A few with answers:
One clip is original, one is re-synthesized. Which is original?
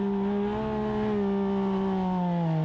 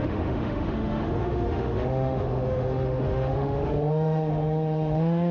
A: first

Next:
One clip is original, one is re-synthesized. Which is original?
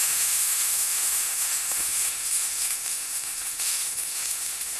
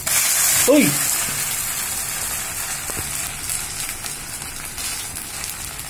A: second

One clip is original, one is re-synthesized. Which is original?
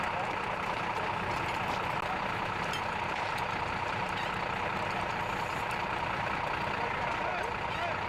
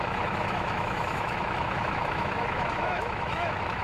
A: first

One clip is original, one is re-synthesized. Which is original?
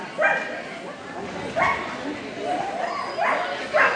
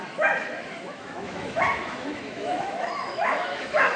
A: first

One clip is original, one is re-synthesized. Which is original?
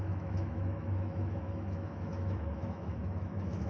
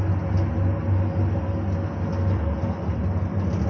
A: second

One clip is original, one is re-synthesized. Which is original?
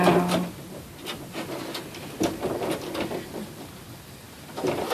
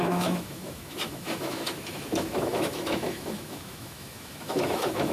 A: first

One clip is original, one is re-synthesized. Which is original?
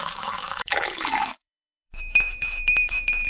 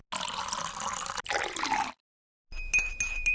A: second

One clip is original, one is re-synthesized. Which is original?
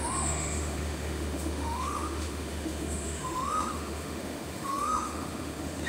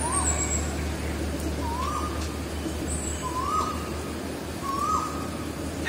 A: second